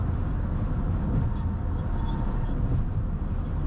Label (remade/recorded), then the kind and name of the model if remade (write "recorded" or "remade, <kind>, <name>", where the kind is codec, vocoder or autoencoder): recorded